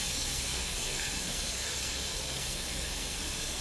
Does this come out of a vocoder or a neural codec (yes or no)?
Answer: yes